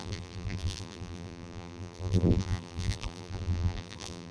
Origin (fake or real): fake